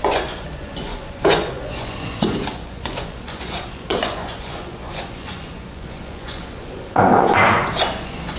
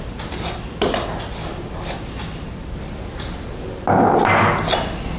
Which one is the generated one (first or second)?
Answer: first